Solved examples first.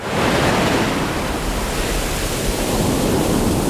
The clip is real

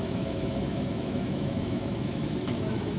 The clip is fake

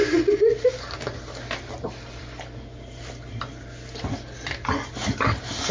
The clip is real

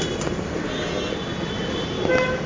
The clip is real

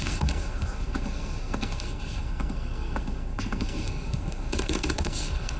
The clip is fake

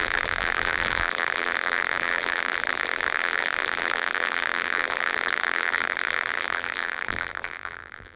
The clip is fake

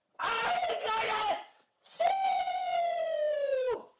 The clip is fake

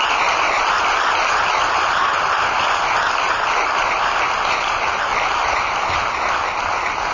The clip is real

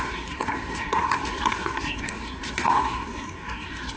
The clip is fake